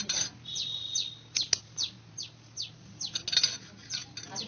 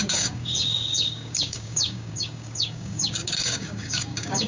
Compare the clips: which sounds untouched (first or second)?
first